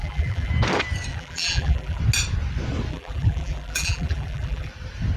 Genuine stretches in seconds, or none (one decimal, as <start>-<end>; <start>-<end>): 0.5-1.1; 2.0-2.9; 4.7-5.2